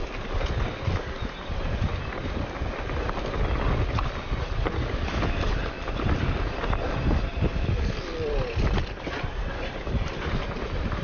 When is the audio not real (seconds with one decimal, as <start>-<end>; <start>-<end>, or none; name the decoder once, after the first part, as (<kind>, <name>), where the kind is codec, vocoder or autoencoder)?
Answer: none